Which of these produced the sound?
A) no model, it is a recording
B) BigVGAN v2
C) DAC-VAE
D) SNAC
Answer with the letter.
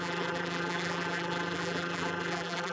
B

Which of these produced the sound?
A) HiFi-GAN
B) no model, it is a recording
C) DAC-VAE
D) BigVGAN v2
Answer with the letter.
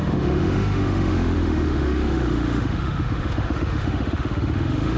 C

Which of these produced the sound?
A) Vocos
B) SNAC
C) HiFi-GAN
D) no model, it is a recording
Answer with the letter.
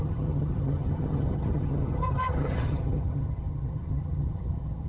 C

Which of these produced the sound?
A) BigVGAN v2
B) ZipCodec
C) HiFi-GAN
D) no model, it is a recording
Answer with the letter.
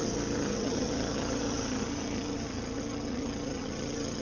C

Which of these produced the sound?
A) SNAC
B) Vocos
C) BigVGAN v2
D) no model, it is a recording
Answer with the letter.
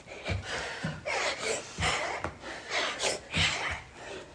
D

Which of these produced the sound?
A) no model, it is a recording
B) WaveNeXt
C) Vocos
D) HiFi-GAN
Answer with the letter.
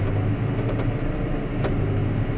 A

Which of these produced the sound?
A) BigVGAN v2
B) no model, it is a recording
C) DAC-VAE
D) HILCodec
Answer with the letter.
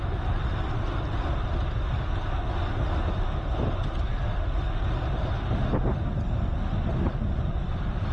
B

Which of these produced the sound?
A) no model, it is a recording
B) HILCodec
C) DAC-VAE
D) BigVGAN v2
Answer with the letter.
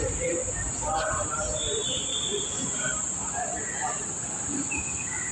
A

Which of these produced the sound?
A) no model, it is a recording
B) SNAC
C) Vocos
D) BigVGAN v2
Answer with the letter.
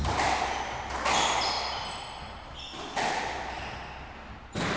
A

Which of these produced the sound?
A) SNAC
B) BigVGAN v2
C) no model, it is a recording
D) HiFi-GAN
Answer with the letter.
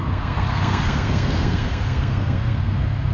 A